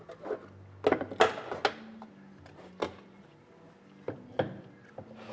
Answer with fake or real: real